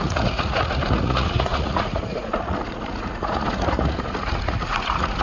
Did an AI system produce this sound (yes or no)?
yes